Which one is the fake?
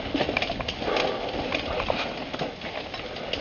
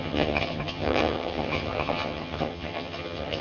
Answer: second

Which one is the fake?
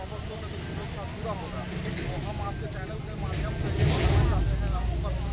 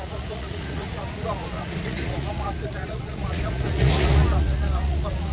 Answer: second